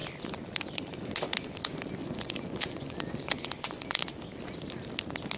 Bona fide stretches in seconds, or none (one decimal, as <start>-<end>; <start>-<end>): 0.0-2.0; 4.2-5.4